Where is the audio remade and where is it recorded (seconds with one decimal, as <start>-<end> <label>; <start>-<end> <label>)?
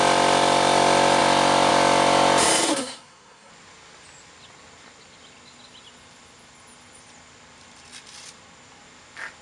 0.0-2.7 recorded; 2.7-3.5 remade; 3.5-9.4 recorded